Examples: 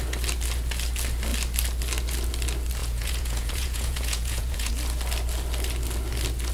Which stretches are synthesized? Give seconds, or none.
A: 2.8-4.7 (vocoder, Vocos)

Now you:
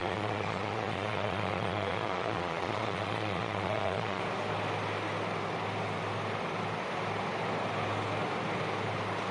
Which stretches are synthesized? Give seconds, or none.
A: 0.0-4.2 (vocoder, Vocos)

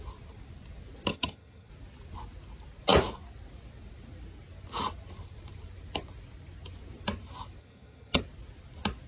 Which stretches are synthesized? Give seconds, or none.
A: 1.1-1.7 (vocoder, HiFi-GAN); 7.6-8.2

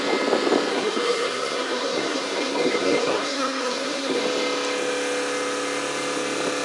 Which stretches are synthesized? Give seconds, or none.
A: 0.7-4.2 (codec, SNAC)

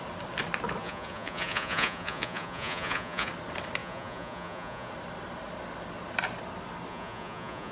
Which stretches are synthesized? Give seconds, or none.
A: 0.8-3.3 (vocoder, Vocos); 3.8-4.9; 6.9-7.7

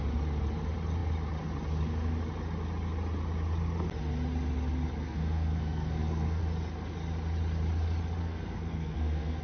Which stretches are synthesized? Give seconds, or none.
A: 5.0-6.4 (codec, SNAC); 8.2-9.4

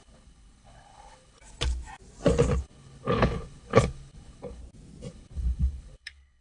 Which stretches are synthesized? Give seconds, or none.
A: 0.0-1.4 (codec, HILCodec); 2.6-4.6; 5.1-6.4

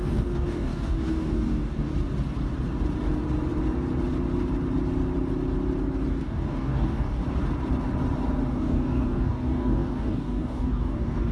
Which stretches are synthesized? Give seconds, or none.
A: 0.0-1.9 (codec, DAC); 6.1-7.2; 8.5-11.3